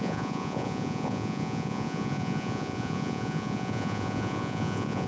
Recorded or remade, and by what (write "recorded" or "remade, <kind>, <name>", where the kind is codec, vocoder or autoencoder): remade, vocoder, Vocos